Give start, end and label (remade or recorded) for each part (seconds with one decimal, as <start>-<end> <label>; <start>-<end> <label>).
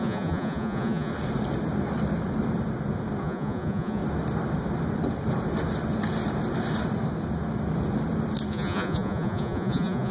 0.0-1.1 remade; 1.1-3.2 recorded; 3.2-4.0 remade; 4.0-8.5 recorded; 8.5-10.1 remade